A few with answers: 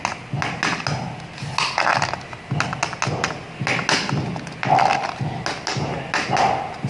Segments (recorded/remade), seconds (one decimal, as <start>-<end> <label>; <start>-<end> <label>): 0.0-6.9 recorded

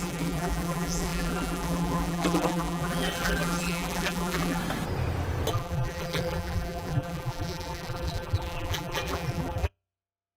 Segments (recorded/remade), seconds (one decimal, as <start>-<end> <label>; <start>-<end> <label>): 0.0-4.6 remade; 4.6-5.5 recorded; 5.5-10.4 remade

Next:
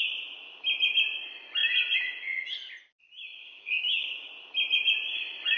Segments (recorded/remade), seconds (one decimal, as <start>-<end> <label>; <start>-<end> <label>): 0.0-3.4 recorded; 3.4-4.3 remade; 4.3-5.6 recorded

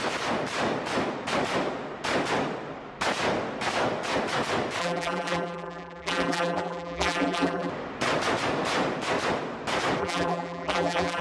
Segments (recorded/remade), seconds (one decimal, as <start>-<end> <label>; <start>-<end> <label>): 0.0-4.8 recorded; 4.8-7.7 remade; 7.7-10.0 recorded; 10.0-11.2 remade

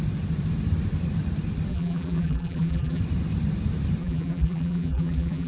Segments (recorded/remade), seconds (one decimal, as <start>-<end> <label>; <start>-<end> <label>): 0.0-1.7 recorded; 1.7-3.0 remade; 3.0-4.0 recorded; 4.0-5.5 remade